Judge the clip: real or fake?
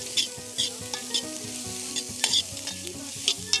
real